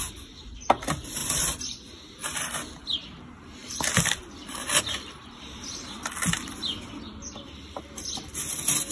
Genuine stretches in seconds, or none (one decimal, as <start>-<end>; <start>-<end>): 0.0-1.2; 2.7-3.6; 4.2-4.7; 6.1-8.9